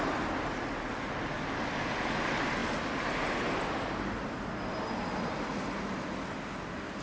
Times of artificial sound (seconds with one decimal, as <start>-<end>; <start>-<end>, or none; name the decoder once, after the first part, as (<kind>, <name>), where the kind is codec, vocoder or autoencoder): none